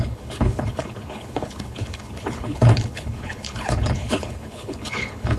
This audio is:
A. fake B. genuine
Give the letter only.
A